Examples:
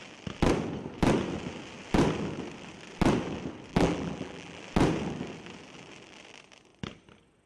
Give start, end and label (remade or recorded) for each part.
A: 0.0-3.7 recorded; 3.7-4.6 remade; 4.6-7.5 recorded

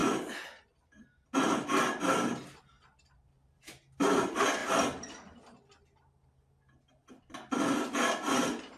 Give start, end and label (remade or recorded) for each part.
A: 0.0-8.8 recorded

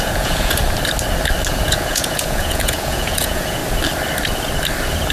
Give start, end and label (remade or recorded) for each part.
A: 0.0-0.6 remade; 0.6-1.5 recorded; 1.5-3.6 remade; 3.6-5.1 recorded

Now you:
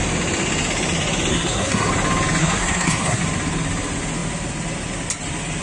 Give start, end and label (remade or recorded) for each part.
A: 0.0-1.3 recorded; 1.3-1.9 remade; 1.9-2.4 recorded; 2.4-3.2 remade; 3.2-5.6 recorded

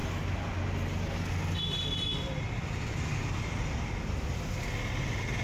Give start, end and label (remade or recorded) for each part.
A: 0.0-5.4 recorded